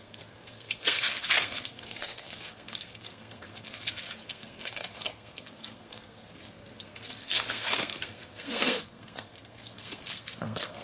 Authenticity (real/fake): fake